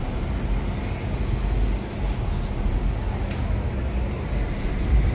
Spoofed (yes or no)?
no